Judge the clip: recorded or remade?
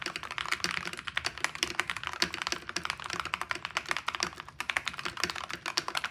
recorded